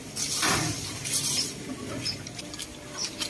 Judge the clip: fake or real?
real